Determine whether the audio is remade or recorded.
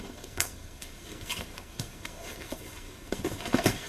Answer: remade